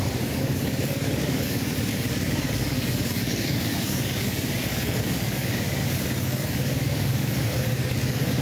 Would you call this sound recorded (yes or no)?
no